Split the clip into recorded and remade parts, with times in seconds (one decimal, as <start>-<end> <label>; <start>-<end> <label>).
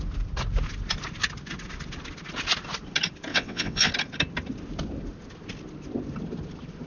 0.0-3.3 recorded; 3.3-3.9 remade; 3.9-6.9 recorded